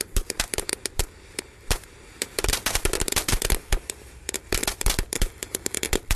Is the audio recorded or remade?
remade